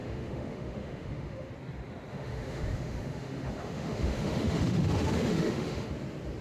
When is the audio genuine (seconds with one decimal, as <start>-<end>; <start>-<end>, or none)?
1.5-2.1; 5.9-6.4